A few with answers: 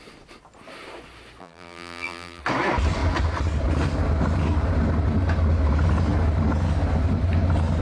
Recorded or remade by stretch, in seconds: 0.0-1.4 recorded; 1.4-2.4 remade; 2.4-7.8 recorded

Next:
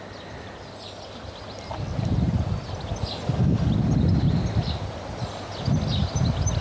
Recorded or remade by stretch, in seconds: 0.0-6.6 recorded

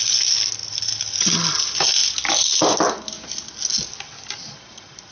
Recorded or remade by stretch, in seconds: 0.0-5.1 recorded

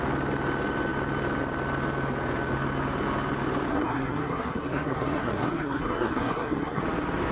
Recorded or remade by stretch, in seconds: 0.0-3.7 recorded; 3.7-6.8 remade; 6.8-7.3 recorded

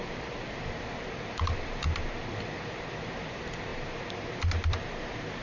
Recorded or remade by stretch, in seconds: 0.0-5.4 remade

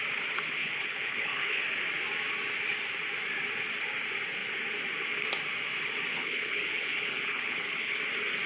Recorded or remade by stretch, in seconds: 0.0-0.6 recorded; 0.6-1.6 remade; 1.6-6.1 recorded; 6.1-8.0 remade; 8.0-8.5 recorded

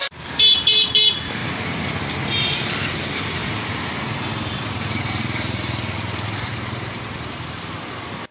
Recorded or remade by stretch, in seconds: 0.0-1.4 remade; 1.4-2.4 recorded; 2.4-3.4 remade; 3.4-4.1 recorded; 4.1-8.3 remade